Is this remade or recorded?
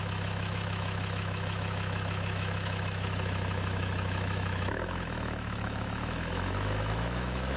remade